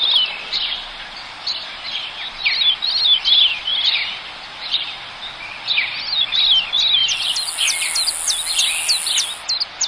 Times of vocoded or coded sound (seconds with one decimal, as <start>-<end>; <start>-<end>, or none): none